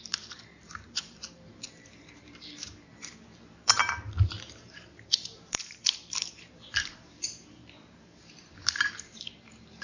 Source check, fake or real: fake